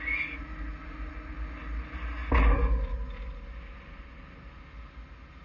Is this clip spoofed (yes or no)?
no